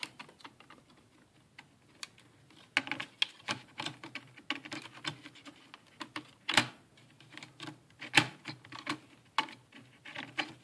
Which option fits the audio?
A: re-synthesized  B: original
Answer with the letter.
B